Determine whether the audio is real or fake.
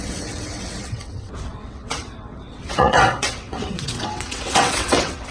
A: fake